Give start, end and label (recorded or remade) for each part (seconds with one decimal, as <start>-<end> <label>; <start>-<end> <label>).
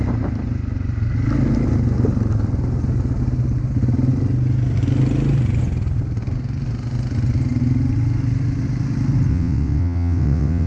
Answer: 0.0-9.3 recorded; 9.3-10.7 remade